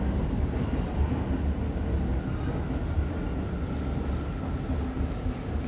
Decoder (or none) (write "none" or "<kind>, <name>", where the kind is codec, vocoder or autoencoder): none